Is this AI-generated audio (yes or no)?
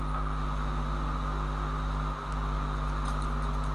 no